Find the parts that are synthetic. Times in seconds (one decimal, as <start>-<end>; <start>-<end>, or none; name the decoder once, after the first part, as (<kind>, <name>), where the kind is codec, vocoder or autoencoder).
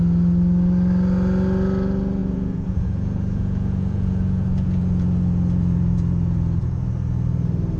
2.2-6.9 (vocoder, Vocos)